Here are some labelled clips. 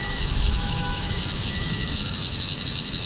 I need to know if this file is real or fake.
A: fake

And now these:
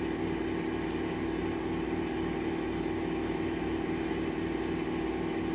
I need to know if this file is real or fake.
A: real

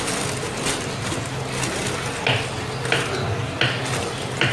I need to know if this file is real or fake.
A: real